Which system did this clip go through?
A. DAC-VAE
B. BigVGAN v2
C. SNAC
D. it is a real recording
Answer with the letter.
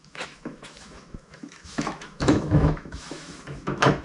A